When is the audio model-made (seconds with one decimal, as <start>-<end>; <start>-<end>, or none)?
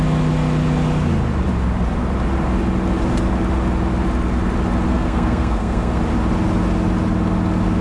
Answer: 4.9-6.0